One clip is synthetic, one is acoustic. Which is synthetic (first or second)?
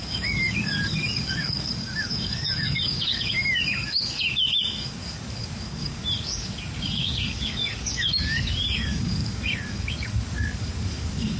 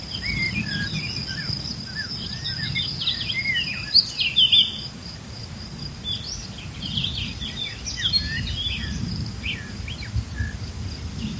first